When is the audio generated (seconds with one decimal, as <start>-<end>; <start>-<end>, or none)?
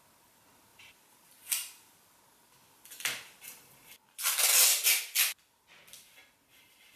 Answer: 0.7-2.2; 2.6-3.7